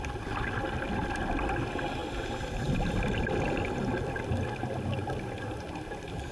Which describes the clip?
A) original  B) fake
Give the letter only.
A